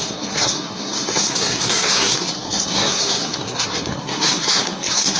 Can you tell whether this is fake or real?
fake